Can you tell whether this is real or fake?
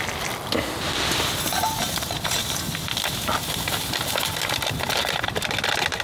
real